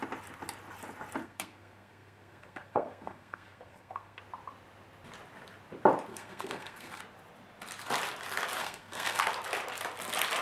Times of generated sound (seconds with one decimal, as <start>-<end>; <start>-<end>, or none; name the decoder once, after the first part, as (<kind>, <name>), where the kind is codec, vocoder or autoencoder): 1.2-4.2 (codec, SNAC); 6.1-7.0; 8.6-9.3